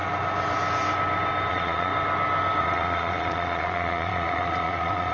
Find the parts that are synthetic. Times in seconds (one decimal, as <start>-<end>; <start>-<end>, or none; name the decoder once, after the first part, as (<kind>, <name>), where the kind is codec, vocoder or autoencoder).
1.5-1.9 (vocoder, Vocos); 2.6-5.1